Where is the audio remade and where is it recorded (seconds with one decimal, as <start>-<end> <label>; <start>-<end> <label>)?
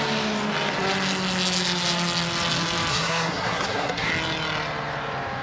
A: 0.0-2.9 recorded; 2.9-4.1 remade; 4.1-5.4 recorded